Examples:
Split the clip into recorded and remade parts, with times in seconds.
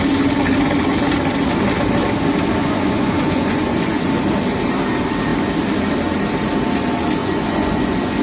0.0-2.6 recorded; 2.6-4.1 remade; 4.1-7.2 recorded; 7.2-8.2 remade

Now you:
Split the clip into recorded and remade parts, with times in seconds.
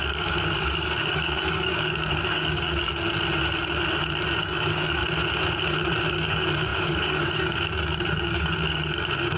0.0-2.9 remade; 2.9-4.4 recorded; 4.4-5.0 remade; 5.0-6.1 recorded; 6.1-9.4 remade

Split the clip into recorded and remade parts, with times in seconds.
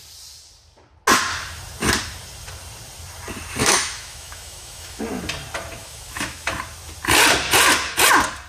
0.0-3.6 recorded; 3.6-5.0 remade; 5.0-5.8 recorded; 5.8-6.5 remade; 6.5-8.5 recorded